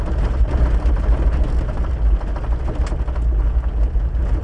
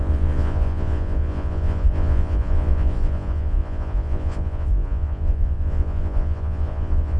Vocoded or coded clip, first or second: second